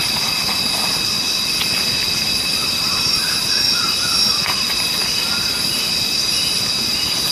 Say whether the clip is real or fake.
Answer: real